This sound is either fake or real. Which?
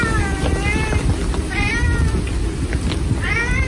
real